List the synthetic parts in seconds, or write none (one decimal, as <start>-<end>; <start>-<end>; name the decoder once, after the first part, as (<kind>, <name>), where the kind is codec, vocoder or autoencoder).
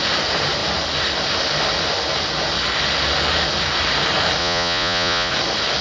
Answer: 4.4-5.3 (vocoder, Vocos)